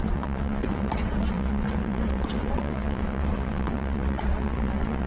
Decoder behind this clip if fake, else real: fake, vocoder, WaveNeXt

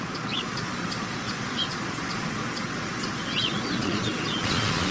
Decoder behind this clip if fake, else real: fake, vocoder, Vocos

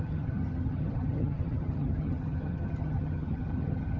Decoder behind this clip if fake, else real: fake, vocoder, HiFi-GAN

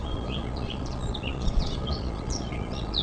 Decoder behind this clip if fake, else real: fake, vocoder, Vocos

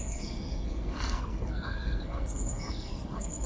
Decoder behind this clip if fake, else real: fake, codec, SNAC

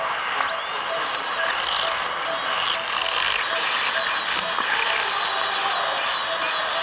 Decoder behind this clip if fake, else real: real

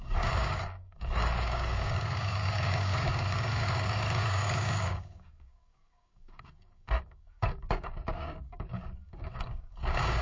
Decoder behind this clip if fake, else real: fake, codec, DAC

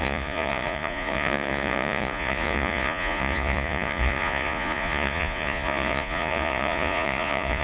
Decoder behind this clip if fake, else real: fake, vocoder, Vocos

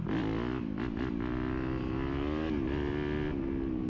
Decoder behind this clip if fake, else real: real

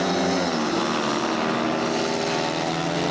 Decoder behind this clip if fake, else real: real